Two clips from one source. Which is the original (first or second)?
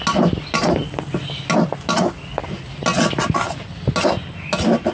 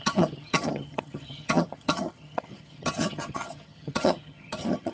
first